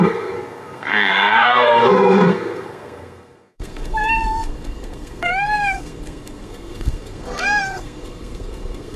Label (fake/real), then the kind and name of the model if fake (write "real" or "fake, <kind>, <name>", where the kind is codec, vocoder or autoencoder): fake, codec, SNAC